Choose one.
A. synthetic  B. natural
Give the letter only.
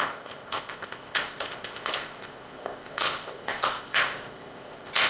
A